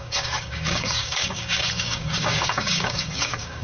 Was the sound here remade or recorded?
remade